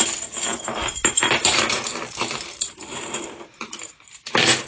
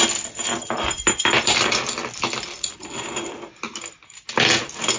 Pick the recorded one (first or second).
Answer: second